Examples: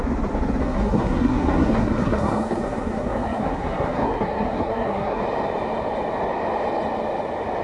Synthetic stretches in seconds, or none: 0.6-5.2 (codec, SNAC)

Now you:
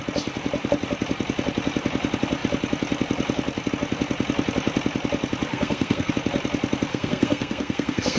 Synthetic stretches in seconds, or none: 5.5-6.1 (codec, SNAC); 6.9-8.2